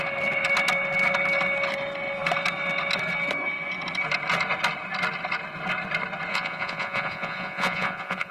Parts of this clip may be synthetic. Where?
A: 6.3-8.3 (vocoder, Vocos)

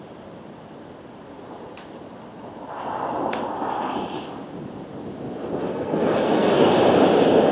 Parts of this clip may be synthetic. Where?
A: 5.7-6.7 (codec, SNAC)

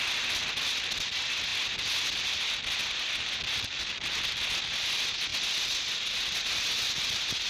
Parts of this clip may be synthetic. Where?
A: none